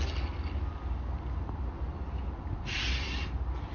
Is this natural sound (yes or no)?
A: yes